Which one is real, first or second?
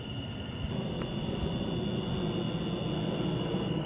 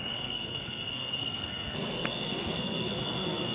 first